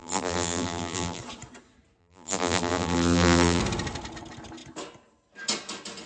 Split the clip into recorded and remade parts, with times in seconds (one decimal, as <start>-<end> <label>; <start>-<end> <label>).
0.0-1.2 remade; 1.2-2.0 recorded; 2.0-3.6 remade; 3.6-6.1 recorded